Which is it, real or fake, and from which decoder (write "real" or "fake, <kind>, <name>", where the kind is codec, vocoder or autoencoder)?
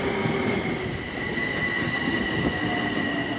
real